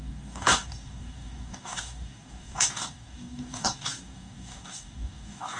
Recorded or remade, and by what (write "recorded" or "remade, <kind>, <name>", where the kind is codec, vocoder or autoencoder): remade, codec, DAC